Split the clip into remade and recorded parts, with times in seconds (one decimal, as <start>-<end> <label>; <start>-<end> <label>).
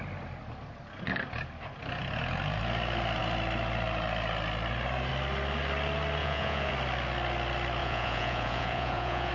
0.0-6.2 recorded; 6.2-6.7 remade; 6.7-7.8 recorded; 7.8-9.3 remade